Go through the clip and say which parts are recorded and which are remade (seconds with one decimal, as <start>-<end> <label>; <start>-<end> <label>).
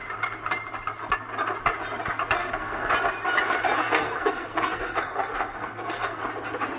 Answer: 0.0-2.4 recorded; 2.4-2.9 remade; 2.9-3.8 recorded; 3.8-6.2 remade; 6.2-6.8 recorded